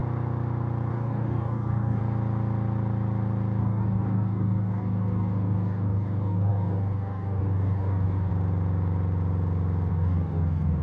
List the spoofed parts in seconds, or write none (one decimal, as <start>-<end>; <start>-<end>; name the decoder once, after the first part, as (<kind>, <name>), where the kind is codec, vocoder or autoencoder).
0.9-2.0 (codec, DAC); 3.6-8.3; 9.9-10.8